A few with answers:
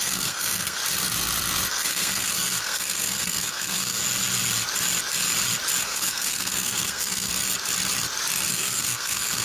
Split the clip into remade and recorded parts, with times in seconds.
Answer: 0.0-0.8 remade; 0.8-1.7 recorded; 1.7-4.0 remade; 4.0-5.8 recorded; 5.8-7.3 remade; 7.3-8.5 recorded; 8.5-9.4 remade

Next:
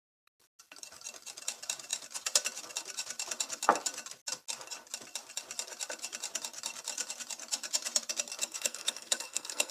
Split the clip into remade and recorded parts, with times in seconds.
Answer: 0.0-8.4 recorded; 8.4-9.7 remade

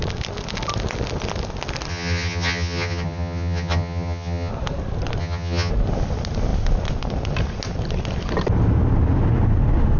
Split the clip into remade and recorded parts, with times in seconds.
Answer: 0.0-1.9 recorded; 1.9-4.5 remade; 4.5-5.2 recorded; 5.2-5.7 remade; 5.7-10.0 recorded

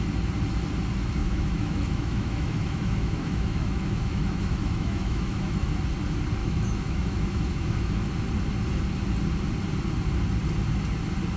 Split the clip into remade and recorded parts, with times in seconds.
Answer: 0.0-1.2 recorded; 1.2-5.7 remade; 5.7-6.4 recorded; 6.4-8.1 remade; 8.1-11.4 recorded

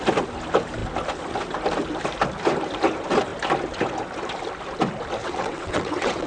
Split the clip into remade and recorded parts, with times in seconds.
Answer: 0.0-5.2 recorded; 5.2-6.3 remade